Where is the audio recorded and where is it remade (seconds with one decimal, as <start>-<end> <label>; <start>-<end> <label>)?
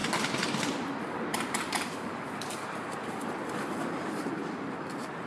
0.0-0.7 recorded; 0.7-5.3 remade